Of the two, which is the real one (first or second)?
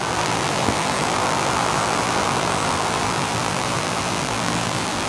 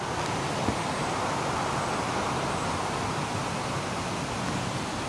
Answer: second